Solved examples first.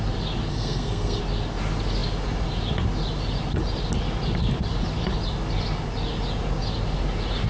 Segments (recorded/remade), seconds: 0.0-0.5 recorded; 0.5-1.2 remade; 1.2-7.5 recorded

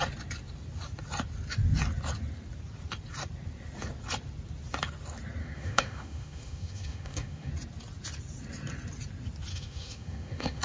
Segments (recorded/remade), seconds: 0.0-5.4 recorded; 5.4-7.5 remade; 7.5-9.5 recorded; 9.5-10.6 remade

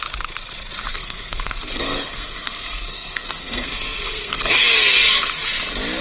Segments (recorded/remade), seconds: 0.0-0.9 recorded; 0.9-4.5 remade; 4.5-6.0 recorded

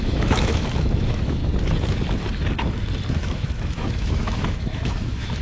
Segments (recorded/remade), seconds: 0.0-1.4 remade; 1.4-3.1 recorded; 3.1-5.4 remade

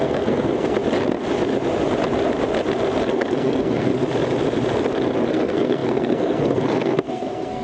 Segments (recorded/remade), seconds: 0.0-0.8 remade; 0.8-3.0 recorded; 3.0-3.9 remade; 3.9-5.3 recorded; 5.3-7.6 remade

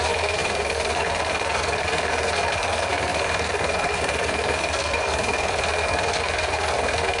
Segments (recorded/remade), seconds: 0.0-7.2 remade